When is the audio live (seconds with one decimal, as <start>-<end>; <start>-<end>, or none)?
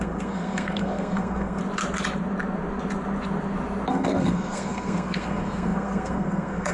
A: 1.6-3.9